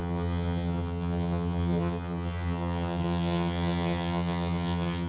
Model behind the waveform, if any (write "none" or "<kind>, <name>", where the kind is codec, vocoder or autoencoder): vocoder, HiFi-GAN